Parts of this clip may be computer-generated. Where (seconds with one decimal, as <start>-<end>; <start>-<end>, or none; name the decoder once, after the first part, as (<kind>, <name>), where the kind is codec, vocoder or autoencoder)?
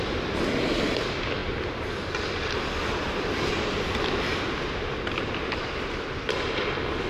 none